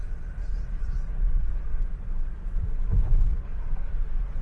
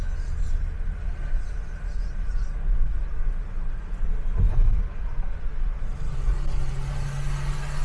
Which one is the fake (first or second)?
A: first